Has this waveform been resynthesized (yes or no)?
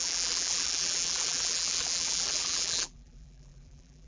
yes